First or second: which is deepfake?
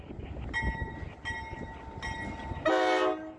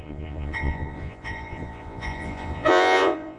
second